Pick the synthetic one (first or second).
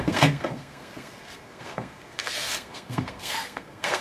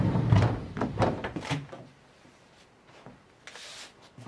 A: first